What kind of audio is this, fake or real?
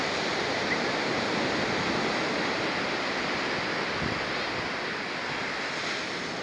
real